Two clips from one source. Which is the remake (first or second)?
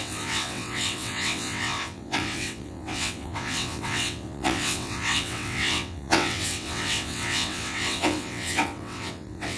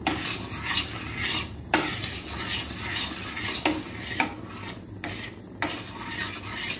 first